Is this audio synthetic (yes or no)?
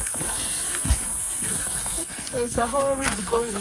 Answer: yes